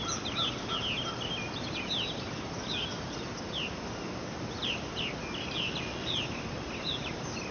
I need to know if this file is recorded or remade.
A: recorded